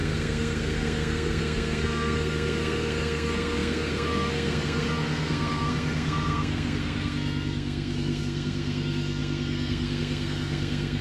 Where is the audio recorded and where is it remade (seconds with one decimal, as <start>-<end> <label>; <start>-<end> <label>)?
0.0-11.0 remade